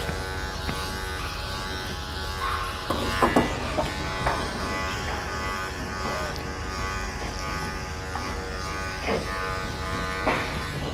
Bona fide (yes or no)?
yes